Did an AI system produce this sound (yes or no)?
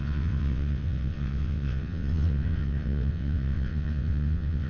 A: yes